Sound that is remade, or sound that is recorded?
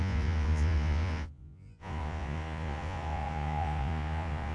remade